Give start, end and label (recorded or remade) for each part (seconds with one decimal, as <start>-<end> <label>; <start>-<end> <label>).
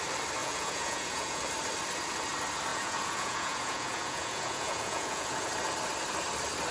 0.0-0.4 recorded; 0.4-1.4 remade; 1.4-2.7 recorded; 2.7-5.5 remade; 5.5-6.7 recorded